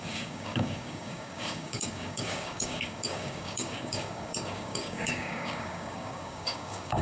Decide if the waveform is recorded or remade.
remade